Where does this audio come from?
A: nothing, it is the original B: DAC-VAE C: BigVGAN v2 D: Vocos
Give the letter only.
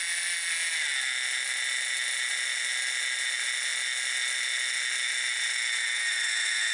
A